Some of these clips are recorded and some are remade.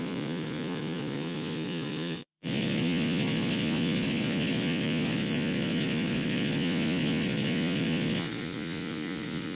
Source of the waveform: remade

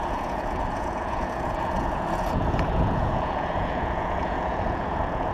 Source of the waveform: remade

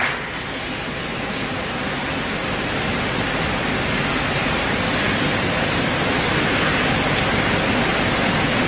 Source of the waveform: recorded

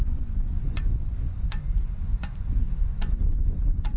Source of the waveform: remade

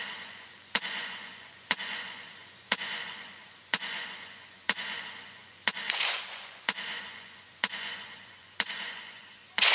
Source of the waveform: remade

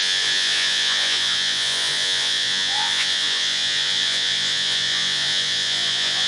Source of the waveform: remade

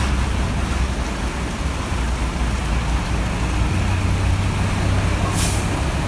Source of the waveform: recorded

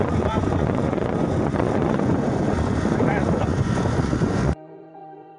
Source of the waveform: remade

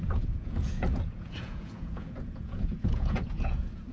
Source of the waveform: remade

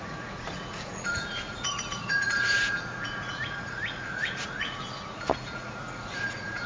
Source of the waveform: remade